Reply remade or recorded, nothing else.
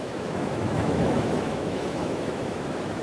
remade